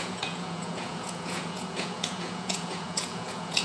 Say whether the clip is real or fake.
fake